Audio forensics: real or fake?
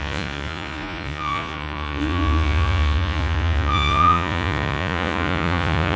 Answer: fake